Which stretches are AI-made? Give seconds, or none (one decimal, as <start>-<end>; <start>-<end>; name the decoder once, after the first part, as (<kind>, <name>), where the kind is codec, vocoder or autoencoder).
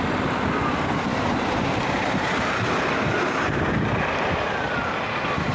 1.1-4.4 (vocoder, BigVGAN v2)